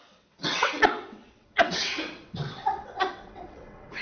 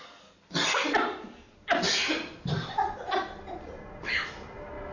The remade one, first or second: first